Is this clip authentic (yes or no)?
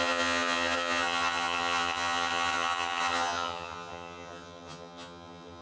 no